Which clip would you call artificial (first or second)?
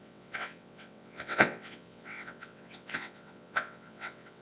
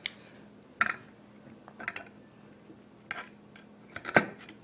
first